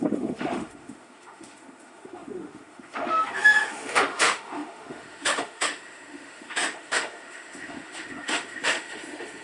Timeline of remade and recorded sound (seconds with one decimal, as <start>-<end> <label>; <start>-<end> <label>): 0.0-9.4 remade